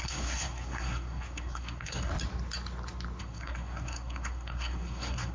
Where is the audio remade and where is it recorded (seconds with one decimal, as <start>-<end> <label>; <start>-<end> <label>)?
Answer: 0.0-2.1 remade; 2.1-3.2 recorded; 3.2-5.3 remade